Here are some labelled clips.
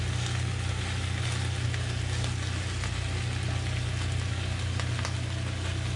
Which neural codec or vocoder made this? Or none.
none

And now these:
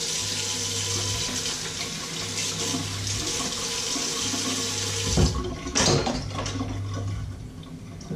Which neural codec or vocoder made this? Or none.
none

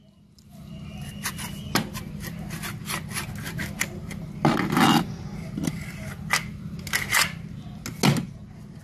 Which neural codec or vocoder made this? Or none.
none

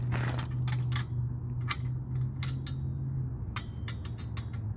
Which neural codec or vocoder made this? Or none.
none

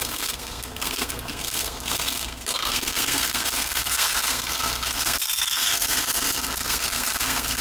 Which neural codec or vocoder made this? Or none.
codec, SNAC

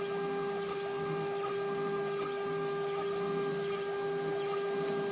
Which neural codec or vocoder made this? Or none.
none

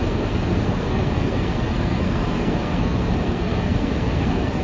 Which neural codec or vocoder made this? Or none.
codec, SNAC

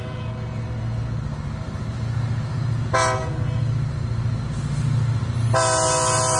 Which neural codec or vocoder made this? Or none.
none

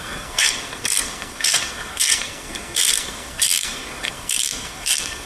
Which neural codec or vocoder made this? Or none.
codec, SNAC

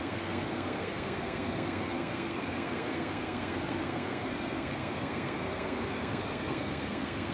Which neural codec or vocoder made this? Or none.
codec, SNAC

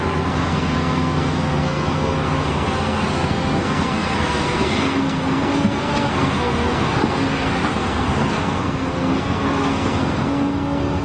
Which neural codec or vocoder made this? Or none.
codec, SNAC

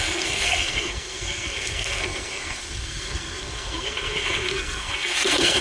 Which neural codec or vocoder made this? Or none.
codec, SNAC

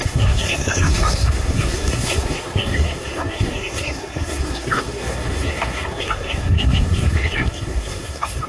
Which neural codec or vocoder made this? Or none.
codec, SNAC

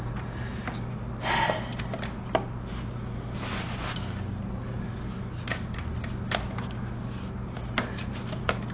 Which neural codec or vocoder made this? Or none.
none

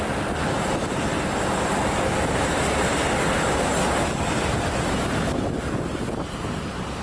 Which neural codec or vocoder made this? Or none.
none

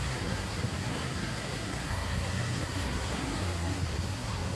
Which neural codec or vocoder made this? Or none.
codec, SNAC